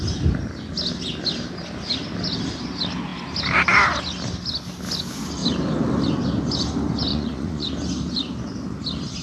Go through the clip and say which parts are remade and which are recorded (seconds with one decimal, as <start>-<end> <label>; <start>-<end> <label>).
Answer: 0.0-7.1 recorded; 7.1-7.7 remade; 7.7-9.2 recorded